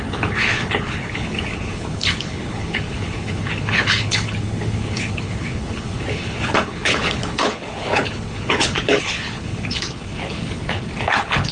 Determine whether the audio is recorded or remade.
remade